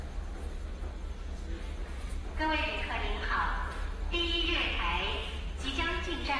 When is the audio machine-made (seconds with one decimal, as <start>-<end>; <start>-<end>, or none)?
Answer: 1.8-2.9